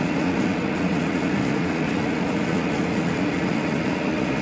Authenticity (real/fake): fake